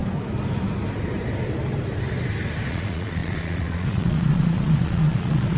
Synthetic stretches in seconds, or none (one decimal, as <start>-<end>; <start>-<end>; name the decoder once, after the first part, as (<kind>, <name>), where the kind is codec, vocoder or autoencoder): 2.7-5.6 (vocoder, Vocos)